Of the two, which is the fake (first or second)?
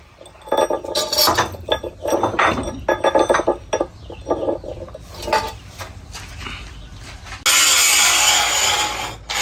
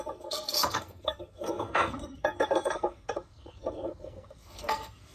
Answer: second